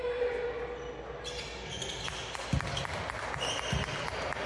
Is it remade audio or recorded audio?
recorded